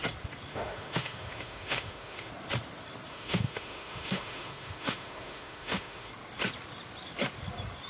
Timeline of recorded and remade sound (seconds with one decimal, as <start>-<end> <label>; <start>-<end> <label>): 0.0-0.5 recorded; 0.5-2.3 remade; 2.3-3.1 recorded; 3.1-6.1 remade; 6.1-7.9 recorded